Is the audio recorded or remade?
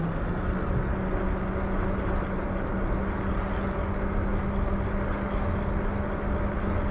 recorded